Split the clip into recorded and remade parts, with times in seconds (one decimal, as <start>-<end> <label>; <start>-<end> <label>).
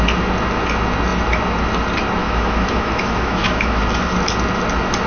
0.0-2.2 recorded; 2.2-3.8 remade; 3.8-5.1 recorded